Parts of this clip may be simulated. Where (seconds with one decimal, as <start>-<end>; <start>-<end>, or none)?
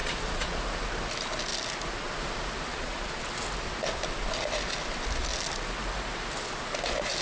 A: 0.0-0.6; 2.7-3.2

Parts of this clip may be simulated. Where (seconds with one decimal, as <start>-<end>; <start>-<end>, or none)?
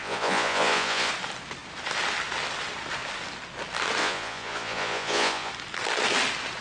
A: 0.0-1.1; 4.0-5.5